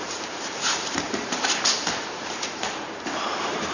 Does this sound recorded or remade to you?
remade